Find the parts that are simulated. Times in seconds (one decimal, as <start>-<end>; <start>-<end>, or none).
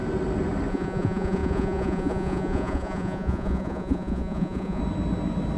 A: 0.7-4.8